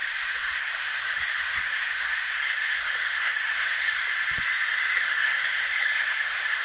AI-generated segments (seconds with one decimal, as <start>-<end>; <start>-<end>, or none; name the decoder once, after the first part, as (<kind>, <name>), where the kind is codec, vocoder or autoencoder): 0.0-4.0 (codec, SNAC); 4.7-6.6